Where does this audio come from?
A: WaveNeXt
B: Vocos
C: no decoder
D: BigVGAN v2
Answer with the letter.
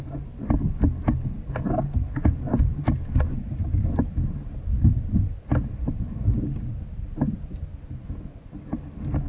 C